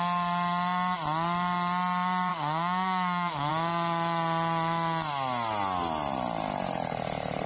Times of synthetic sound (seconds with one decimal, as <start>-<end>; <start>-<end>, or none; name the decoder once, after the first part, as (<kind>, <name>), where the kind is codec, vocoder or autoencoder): 2.3-3.5 (codec, DAC)